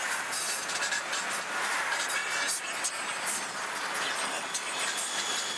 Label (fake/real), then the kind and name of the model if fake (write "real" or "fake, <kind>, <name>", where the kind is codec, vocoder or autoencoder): real